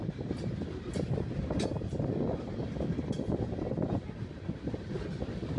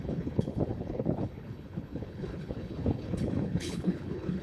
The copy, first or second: second